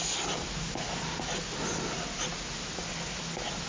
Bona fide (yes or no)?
yes